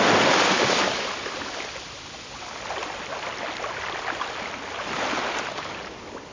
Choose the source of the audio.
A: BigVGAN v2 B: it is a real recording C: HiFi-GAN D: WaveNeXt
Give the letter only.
B